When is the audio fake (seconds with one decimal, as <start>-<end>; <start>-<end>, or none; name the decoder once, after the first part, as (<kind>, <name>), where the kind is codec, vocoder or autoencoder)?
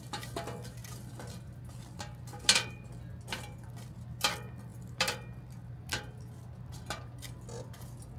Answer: none